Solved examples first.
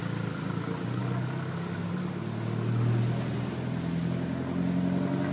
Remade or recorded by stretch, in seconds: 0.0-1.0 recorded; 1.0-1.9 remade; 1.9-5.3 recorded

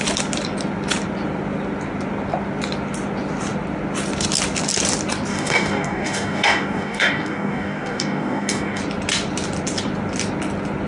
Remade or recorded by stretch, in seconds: 0.0-5.3 recorded; 5.3-8.8 remade; 8.8-10.9 recorded

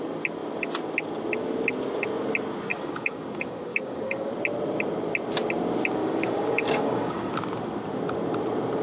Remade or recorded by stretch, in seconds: 0.0-2.7 recorded; 2.7-4.3 remade; 4.3-6.0 recorded; 6.0-7.3 remade; 7.3-8.8 recorded

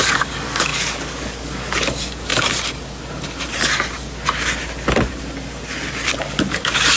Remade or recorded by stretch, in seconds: 0.0-2.3 remade; 2.3-6.5 recorded; 6.5-7.0 remade

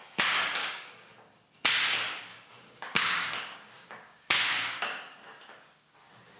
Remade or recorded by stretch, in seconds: 0.0-0.6 recorded; 0.6-1.1 remade; 1.1-2.3 recorded; 2.3-6.4 remade

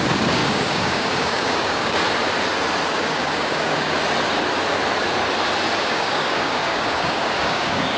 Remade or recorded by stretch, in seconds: 0.0-2.0 remade; 2.0-2.9 recorded; 2.9-4.0 remade; 4.0-5.8 recorded; 5.8-8.0 remade

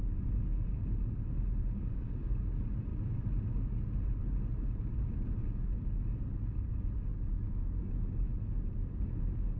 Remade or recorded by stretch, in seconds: 0.0-1.6 recorded; 1.6-2.4 remade; 2.4-7.1 recorded; 7.1-7.9 remade; 7.9-9.6 recorded

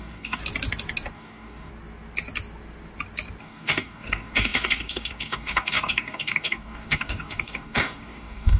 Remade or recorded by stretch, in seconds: 0.0-0.4 remade; 0.4-1.1 recorded; 1.1-1.7 remade; 1.7-3.4 recorded; 3.4-8.6 remade